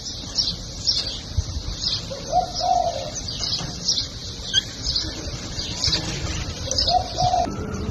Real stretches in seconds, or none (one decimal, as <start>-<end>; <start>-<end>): 0.0-7.9